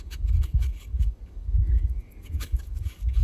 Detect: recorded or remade remade